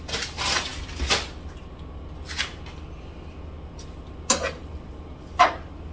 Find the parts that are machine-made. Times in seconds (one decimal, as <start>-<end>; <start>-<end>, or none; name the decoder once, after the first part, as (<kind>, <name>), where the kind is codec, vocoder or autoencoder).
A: none